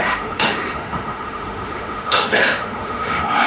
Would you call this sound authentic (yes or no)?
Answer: no